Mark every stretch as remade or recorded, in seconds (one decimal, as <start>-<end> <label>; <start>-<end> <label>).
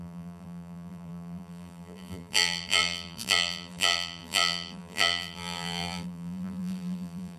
0.0-7.4 remade